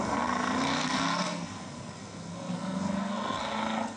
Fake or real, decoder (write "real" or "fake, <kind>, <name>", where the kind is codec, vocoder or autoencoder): fake, codec, SNAC